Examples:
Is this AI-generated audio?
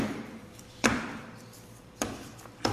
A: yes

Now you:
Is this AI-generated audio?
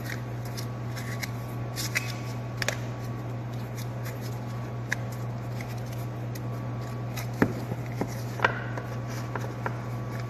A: no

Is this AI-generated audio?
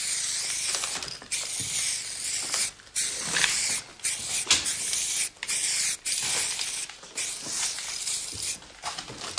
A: no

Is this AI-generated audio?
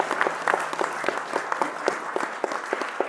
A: no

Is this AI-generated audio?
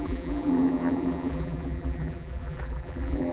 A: yes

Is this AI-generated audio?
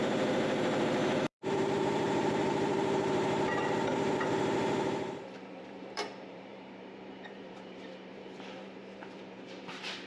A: yes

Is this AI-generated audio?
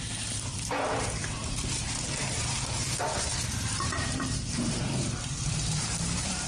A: yes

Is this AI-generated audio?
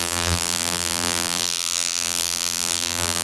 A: yes